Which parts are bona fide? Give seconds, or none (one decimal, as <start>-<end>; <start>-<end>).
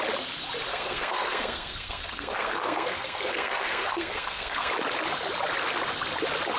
0.0-0.7; 4.7-6.6